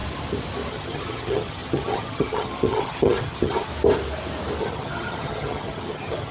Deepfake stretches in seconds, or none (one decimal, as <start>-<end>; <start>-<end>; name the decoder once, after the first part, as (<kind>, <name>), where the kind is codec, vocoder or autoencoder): 0.7-3.7 (vocoder, HiFi-GAN); 4.6-6.3